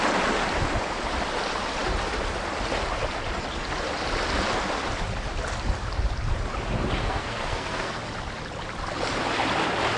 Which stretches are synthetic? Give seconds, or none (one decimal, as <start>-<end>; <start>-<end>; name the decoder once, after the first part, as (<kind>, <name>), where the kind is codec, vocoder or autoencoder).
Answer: 7.0-8.0 (codec, SNAC)